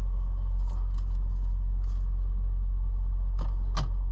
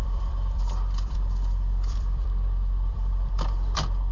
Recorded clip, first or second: first